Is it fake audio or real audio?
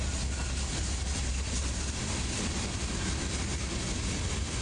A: real